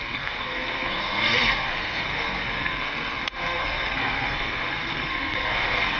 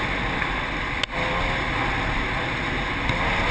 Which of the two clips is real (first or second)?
second